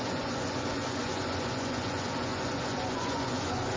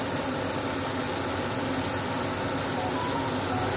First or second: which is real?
second